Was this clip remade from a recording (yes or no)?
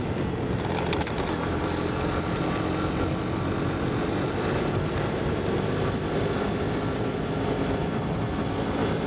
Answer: no